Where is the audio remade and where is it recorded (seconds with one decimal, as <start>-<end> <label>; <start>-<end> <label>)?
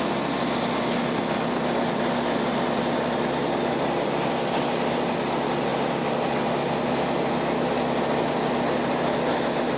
0.0-9.8 recorded